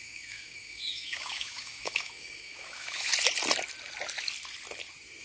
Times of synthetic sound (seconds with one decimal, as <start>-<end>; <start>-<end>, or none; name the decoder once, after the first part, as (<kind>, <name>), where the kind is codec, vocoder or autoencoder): 0.0-3.1 (autoencoder, DAC-VAE)